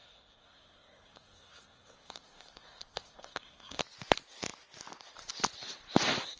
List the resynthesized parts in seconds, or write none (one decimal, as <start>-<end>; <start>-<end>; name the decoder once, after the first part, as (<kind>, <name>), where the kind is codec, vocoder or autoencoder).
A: 0.0-3.8 (codec, SNAC)

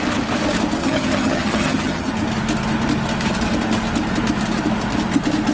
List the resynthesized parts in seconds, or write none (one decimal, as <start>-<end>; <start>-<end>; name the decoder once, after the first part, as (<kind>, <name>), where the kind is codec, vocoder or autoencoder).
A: 0.8-2.1 (vocoder, HiFi-GAN)

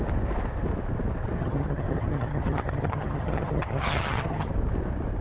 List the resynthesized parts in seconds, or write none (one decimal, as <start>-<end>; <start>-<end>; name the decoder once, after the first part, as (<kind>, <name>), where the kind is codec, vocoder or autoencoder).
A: 1.4-4.5 (vocoder, HiFi-GAN)

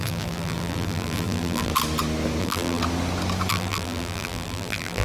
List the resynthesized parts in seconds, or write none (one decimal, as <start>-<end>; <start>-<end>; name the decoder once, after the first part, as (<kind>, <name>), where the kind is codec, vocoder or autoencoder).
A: 0.0-1.7 (vocoder, BigVGAN v2); 2.4-2.8; 3.5-5.0

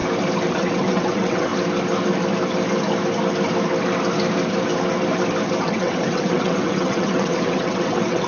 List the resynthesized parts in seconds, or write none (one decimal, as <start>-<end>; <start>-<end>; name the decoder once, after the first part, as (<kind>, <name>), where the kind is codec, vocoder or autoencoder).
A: 0.5-1.5 (vocoder, WaveNeXt); 5.6-8.3

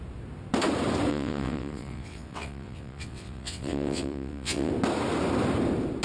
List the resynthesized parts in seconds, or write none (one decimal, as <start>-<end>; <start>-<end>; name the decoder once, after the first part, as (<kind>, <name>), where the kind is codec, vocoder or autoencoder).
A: 1.1-4.7 (vocoder, WaveNeXt)

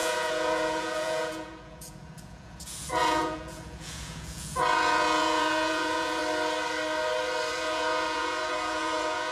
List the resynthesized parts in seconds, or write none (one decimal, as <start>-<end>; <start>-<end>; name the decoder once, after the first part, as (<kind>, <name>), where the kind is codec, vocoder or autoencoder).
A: 0.0-6.2 (vocoder, Vocos); 7.5-9.3